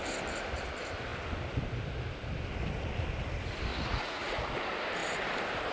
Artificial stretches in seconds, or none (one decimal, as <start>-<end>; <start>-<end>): 3.7-4.5